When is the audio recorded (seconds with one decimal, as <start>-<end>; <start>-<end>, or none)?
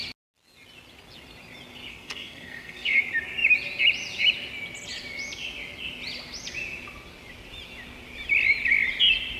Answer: 0.0-1.9; 3.0-9.4